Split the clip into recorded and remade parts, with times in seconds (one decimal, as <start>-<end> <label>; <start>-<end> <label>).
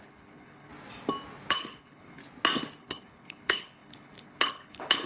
0.0-0.7 remade; 0.7-1.5 recorded; 1.5-2.2 remade; 2.2-2.8 recorded; 2.8-5.1 remade